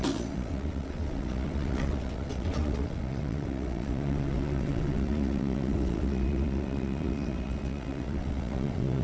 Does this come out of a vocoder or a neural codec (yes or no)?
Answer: yes